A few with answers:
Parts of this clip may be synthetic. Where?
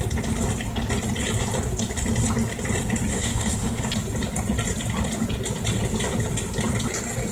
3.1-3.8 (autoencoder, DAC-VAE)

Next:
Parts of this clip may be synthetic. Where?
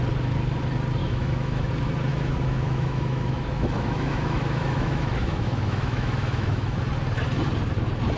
1.0-1.7 (autoencoder, DAC-VAE); 2.1-6.8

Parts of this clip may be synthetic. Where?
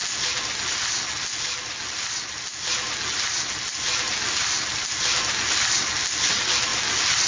none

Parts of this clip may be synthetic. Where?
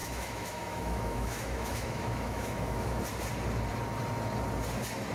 0.0-3.0 (autoencoder, DAC-VAE)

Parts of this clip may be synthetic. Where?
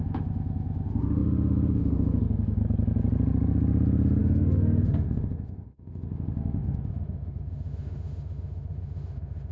0.0-2.6 (autoencoder, DAC-VAE); 4.2-9.5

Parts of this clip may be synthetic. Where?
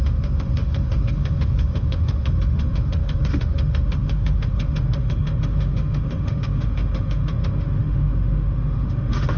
0.0-9.4 (autoencoder, DAC-VAE)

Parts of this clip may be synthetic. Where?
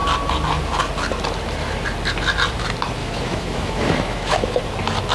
3.0-4.6 (autoencoder, DAC-VAE)